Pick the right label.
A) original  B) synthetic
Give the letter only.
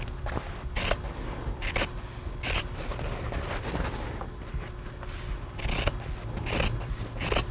A